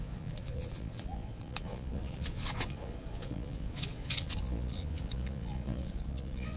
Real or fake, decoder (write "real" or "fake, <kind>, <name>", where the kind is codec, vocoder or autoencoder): fake, vocoder, Vocos